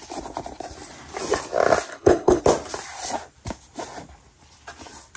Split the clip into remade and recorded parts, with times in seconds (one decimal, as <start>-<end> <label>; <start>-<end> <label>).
0.0-1.9 recorded; 1.9-2.4 remade; 2.4-5.2 recorded